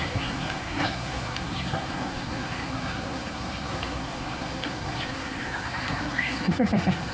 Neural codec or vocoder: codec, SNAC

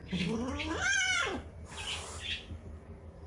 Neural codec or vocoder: none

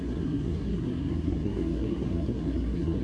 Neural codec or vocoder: codec, SNAC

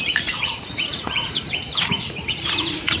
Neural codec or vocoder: vocoder, Vocos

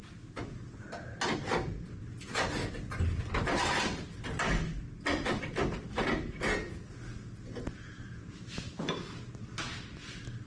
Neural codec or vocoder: none